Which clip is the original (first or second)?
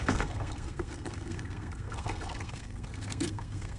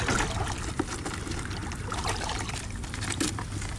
second